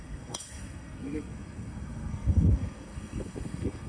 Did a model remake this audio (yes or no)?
yes